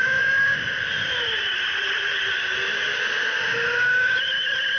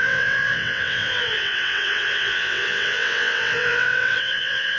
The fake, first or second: second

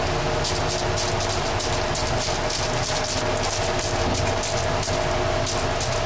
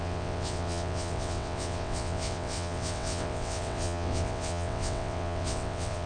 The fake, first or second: second